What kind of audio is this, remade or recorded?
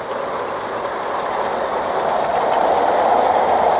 remade